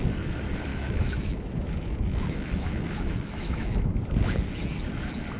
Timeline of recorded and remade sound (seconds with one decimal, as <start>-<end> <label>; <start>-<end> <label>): 0.0-0.7 recorded; 0.7-3.9 remade; 3.9-5.4 recorded